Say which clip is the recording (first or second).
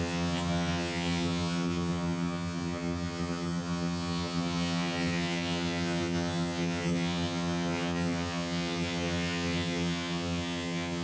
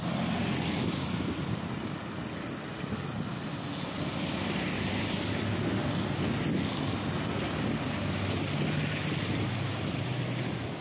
second